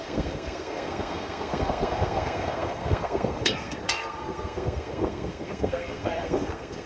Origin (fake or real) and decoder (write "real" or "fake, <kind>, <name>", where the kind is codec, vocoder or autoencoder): fake, codec, SNAC